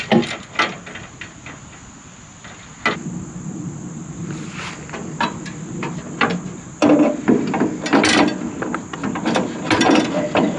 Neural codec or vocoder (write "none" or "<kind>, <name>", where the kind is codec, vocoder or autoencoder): none